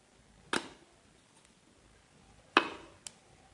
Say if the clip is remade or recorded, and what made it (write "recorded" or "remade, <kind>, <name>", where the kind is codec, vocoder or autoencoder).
recorded